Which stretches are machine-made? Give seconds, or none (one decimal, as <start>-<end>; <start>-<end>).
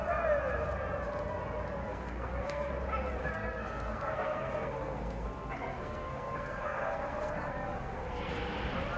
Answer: 1.8-2.7; 3.2-8.3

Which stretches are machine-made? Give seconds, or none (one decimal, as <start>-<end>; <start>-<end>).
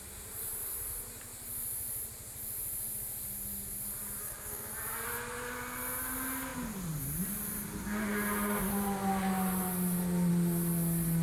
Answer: 4.2-4.7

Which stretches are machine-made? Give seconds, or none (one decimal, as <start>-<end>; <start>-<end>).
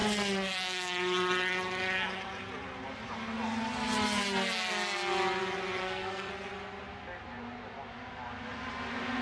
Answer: 5.8-6.3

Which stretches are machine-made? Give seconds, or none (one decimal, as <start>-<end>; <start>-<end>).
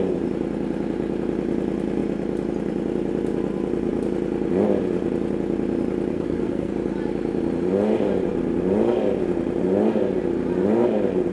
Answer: 6.1-6.7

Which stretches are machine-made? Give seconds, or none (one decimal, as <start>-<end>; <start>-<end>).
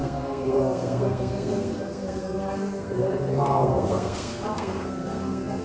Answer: 0.0-5.6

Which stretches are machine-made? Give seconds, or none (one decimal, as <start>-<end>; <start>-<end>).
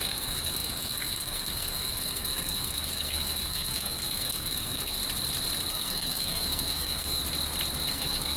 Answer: 0.0-5.0; 5.7-7.2; 7.9-8.4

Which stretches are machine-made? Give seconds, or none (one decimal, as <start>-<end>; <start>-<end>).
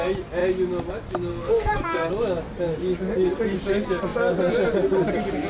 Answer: 1.3-2.1